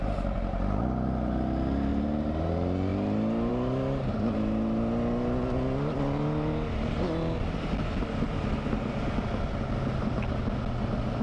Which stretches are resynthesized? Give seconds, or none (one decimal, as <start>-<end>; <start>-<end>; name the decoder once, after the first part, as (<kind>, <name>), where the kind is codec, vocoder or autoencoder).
1.9-2.5 (vocoder, BigVGAN v2)